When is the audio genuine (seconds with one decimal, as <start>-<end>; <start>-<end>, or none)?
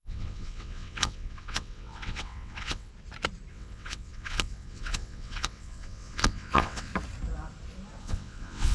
2.9-3.5; 6.9-8.0